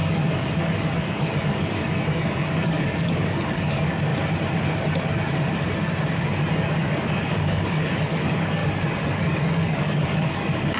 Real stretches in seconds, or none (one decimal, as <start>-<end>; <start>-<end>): 4.1-6.5; 8.6-9.1